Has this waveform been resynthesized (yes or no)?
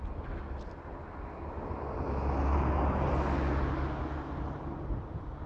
no